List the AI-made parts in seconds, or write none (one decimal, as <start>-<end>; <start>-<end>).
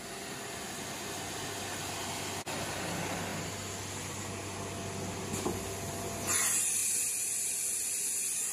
none